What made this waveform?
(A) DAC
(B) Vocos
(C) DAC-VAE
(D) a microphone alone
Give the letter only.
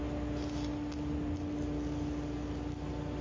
D